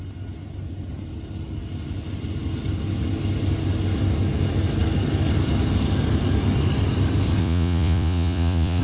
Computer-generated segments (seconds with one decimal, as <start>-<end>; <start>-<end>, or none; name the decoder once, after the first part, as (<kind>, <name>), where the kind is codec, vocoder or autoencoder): 7.4-8.8 (vocoder, Vocos)